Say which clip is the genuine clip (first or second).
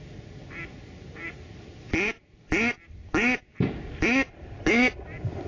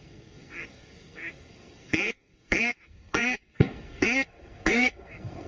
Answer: first